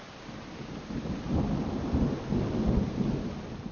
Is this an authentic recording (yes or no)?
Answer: yes